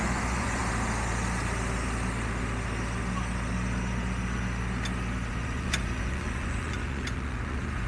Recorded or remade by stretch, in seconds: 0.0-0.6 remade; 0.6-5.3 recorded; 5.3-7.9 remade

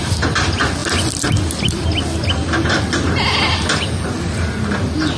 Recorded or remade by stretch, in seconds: 0.0-5.2 recorded

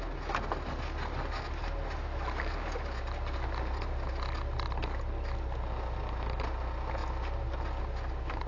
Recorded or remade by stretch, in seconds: 0.0-8.5 recorded

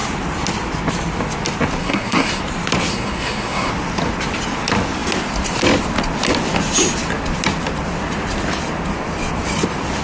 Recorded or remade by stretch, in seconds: 0.0-1.8 recorded; 1.8-2.4 remade; 2.4-2.9 recorded; 2.9-3.7 remade; 3.7-10.0 recorded

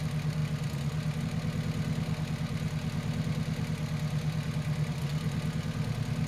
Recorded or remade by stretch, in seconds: 0.0-6.3 recorded

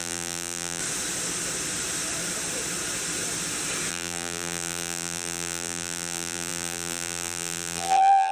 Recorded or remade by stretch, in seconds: 0.0-0.8 remade; 0.8-3.9 recorded; 3.9-8.3 remade

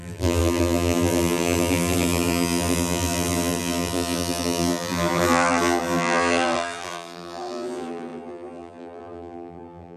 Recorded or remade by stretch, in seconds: 0.0-10.0 remade